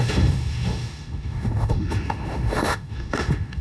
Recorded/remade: remade